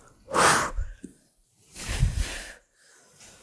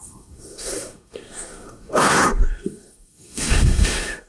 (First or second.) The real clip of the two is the first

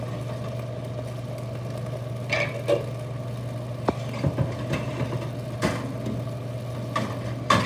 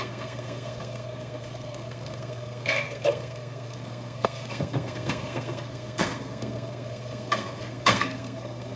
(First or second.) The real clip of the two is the first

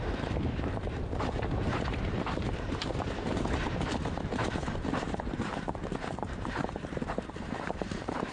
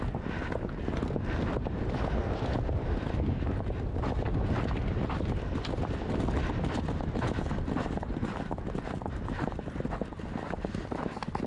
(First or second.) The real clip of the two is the second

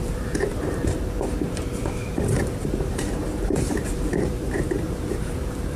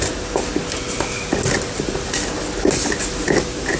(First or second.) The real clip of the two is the second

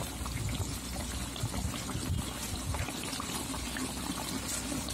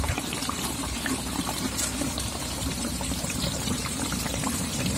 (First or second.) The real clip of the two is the first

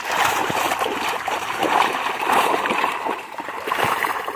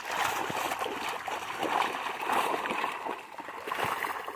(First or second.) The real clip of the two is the second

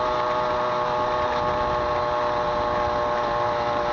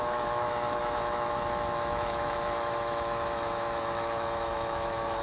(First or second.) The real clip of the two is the first